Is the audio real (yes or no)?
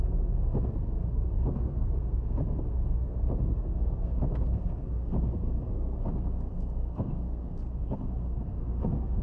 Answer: no